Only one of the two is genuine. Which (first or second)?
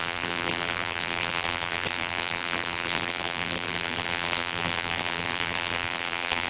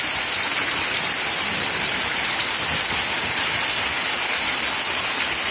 second